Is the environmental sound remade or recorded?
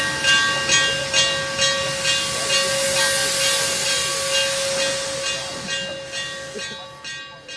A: recorded